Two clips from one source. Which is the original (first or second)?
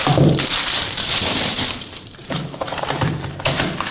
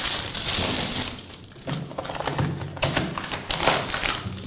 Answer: second